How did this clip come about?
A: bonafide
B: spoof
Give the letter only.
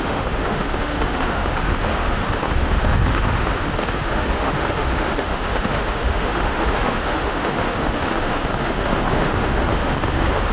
B